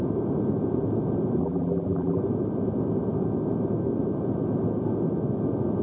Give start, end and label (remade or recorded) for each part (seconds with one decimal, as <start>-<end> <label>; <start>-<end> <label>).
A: 0.0-1.4 recorded; 1.4-2.2 remade; 2.2-5.8 recorded